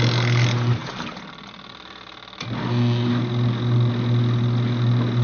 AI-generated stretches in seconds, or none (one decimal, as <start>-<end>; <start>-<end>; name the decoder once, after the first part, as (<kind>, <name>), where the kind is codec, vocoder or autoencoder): 0.8-3.9 (vocoder, BigVGAN v2)